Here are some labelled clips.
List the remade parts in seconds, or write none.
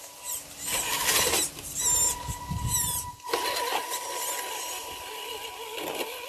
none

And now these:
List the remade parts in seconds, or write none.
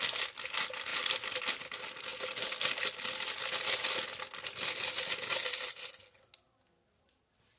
none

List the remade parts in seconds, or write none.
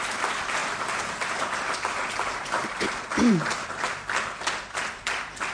0.6-1.6; 2.3-3.9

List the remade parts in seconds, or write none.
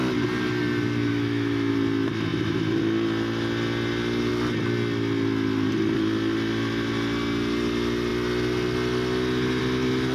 1.1-1.7